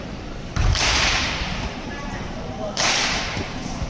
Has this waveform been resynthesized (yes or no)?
yes